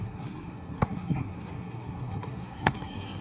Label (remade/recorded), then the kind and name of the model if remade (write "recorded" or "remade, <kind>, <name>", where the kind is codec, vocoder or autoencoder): remade, codec, SNAC